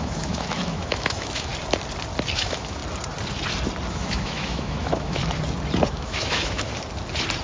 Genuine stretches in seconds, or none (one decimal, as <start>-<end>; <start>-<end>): 1.5-2.3; 2.8-3.9; 5.2-5.9; 6.7-7.4